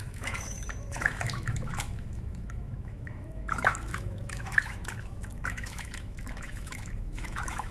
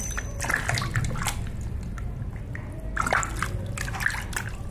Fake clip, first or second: first